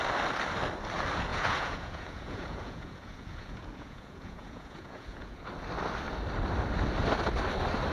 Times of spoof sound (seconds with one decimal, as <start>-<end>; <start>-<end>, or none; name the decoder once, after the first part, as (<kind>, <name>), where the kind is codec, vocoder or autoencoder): 1.3-5.5 (vocoder, Vocos)